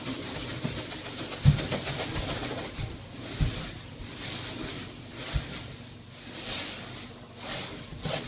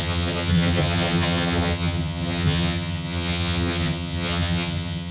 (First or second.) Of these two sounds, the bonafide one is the first